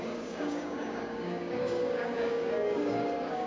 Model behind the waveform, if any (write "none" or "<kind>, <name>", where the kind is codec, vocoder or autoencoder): codec, DAC